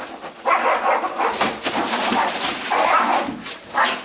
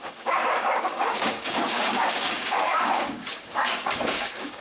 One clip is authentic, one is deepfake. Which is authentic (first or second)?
first